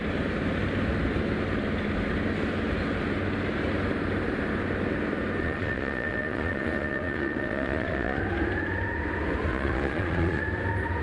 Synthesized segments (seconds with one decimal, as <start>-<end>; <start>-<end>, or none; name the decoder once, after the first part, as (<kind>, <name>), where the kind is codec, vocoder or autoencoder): 5.4-8.2 (vocoder, Vocos); 9.5-10.4